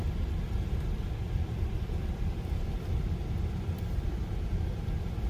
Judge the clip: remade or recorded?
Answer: remade